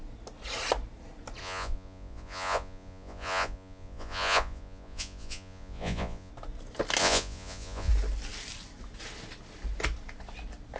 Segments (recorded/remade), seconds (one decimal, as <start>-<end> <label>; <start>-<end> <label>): 0.0-1.4 recorded; 1.4-6.3 remade; 6.3-7.0 recorded; 7.0-7.9 remade; 7.9-10.8 recorded